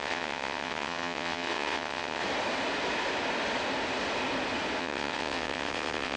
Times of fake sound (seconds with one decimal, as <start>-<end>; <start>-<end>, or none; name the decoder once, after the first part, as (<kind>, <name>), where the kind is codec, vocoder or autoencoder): 0.0-2.2 (vocoder, WaveNeXt); 4.8-6.2